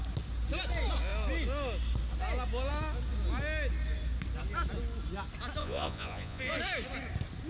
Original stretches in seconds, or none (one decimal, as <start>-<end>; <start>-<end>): 0.0-5.6; 6.4-7.5